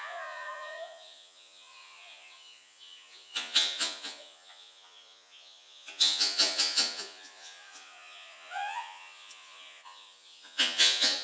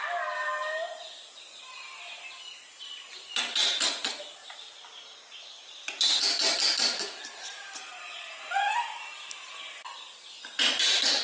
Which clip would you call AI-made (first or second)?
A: first